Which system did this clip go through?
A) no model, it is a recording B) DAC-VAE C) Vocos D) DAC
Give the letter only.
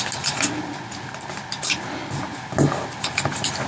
A